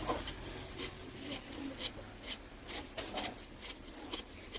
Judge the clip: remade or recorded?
recorded